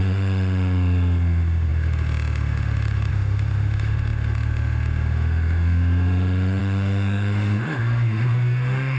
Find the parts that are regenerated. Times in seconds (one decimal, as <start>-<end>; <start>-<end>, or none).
0.0-9.0